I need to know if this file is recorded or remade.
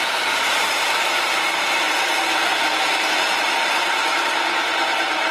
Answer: remade